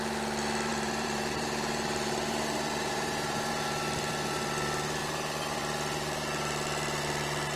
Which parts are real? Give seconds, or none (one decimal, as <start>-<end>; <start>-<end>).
0.0-0.7; 3.5-7.6